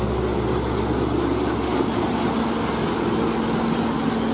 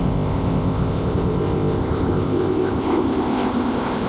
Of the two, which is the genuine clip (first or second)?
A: first